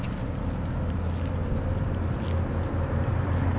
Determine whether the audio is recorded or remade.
recorded